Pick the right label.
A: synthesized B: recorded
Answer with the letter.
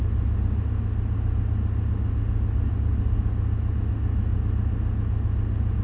B